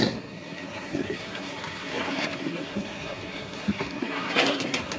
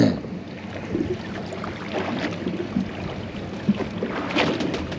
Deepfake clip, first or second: first